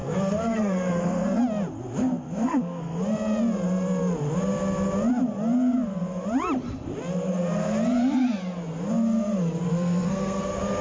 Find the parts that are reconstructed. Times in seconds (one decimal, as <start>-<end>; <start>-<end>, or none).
0.0-1.4; 2.0-3.0; 9.7-10.4